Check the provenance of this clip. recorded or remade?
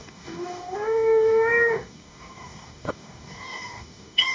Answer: remade